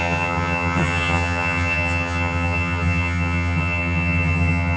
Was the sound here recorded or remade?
remade